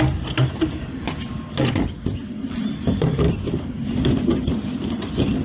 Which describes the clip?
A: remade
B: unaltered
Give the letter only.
B